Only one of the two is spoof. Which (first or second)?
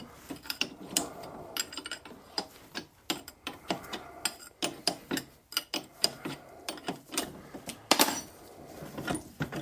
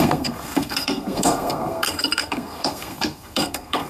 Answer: second